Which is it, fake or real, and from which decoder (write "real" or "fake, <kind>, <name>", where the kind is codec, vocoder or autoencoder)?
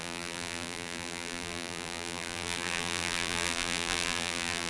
fake, vocoder, BigVGAN v2